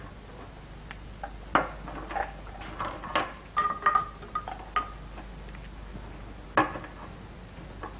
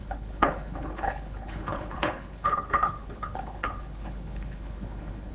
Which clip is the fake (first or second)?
second